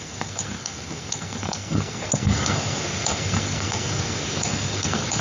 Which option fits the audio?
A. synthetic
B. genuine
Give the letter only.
A